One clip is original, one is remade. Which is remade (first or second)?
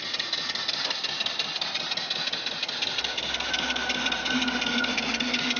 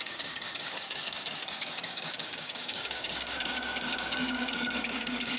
second